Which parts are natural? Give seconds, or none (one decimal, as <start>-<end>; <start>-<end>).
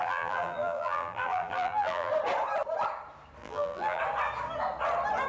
2.1-3.4; 4.0-5.3